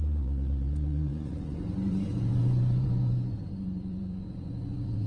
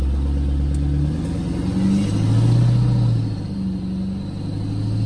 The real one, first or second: second